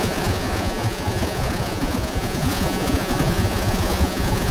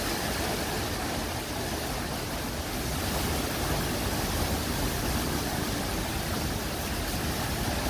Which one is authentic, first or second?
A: second